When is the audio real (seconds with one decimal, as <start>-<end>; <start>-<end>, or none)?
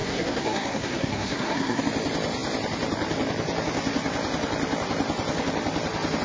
1.8-6.2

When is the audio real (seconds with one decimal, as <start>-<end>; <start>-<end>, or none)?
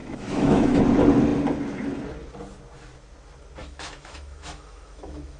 0.8-3.6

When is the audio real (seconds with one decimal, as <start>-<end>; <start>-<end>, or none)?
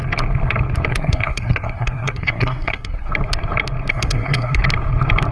0.0-0.9; 3.1-3.9; 4.6-5.3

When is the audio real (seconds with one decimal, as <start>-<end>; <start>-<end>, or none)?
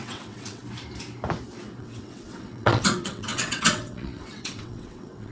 0.6-1.8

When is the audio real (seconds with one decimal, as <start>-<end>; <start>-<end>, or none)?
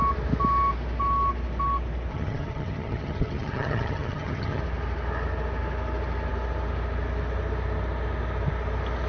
0.0-2.1; 4.6-9.1